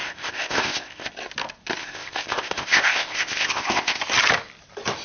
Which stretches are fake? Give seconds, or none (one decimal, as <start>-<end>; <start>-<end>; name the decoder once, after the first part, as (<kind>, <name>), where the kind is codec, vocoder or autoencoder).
0.0-1.1 (codec, ZipCodec); 1.8-4.0